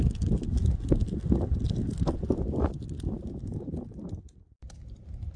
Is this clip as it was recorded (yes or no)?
yes